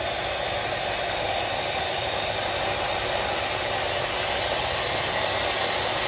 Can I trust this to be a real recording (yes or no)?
yes